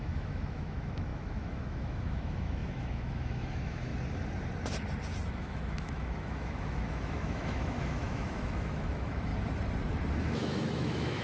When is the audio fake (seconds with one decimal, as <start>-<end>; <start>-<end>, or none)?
0.0-3.9; 5.3-9.3; 10.2-11.2